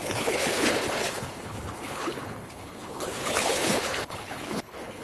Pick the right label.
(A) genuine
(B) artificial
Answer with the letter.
B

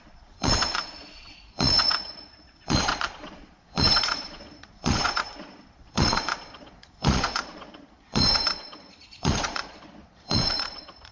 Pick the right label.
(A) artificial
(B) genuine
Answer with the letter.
A